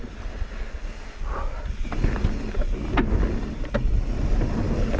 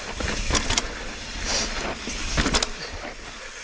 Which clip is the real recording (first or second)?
first